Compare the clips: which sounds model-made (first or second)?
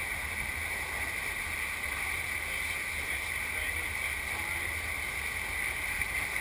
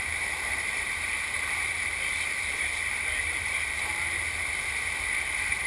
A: second